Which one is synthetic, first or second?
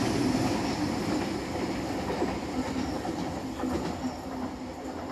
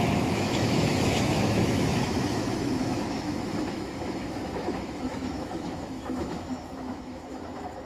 second